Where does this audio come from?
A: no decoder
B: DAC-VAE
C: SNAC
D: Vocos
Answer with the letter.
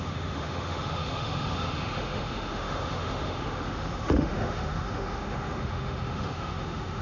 B